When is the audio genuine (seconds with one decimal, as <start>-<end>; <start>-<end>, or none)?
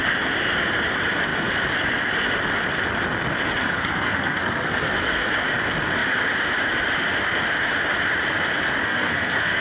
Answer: 0.0-3.6; 5.3-8.8